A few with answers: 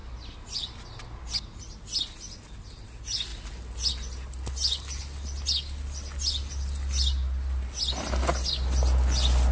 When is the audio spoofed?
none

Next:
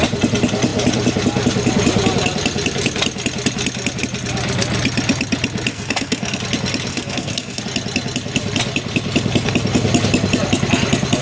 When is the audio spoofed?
5.7-6.4 (codec, SNAC); 6.9-7.6

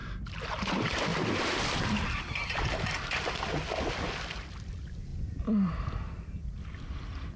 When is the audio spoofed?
none

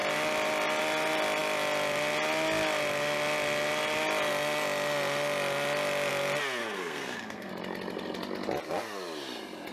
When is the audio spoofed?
6.6-7.5 (codec, SNAC)

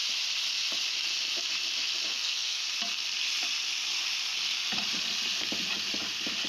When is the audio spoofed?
2.1-2.6 (codec, SNAC)

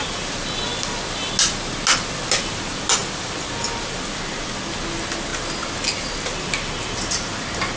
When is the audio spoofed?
none

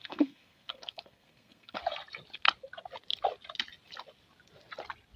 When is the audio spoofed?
0.0-1.8 (codec, SNAC)

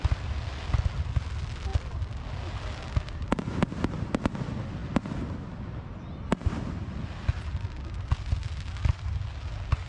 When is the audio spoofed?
none